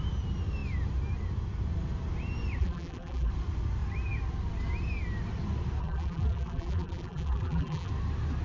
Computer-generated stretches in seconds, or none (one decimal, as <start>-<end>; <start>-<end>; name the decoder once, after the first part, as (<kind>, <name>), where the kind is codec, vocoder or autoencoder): 2.6-3.3 (vocoder, BigVGAN v2); 5.8-7.9